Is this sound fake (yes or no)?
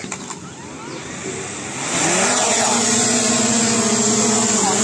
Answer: no